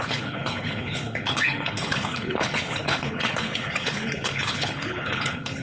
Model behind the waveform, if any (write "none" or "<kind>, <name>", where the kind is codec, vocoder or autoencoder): codec, HILCodec